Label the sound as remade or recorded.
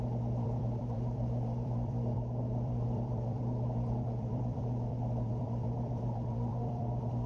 remade